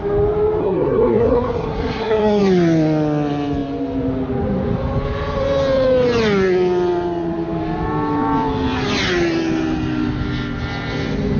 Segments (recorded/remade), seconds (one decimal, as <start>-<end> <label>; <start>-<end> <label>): 0.0-0.6 recorded; 0.6-2.4 remade; 2.4-11.4 recorded